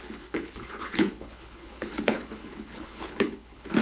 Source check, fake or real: fake